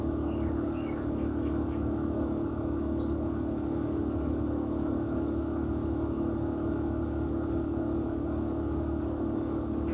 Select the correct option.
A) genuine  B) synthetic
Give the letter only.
B